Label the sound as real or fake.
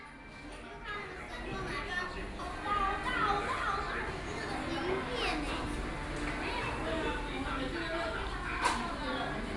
real